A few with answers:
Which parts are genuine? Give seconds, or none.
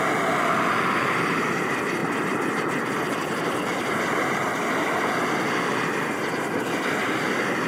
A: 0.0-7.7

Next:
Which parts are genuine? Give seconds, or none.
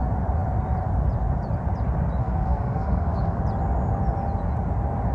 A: 0.0-2.2; 3.4-5.1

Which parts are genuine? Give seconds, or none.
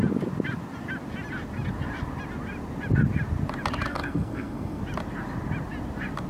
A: 0.0-3.9; 4.8-6.3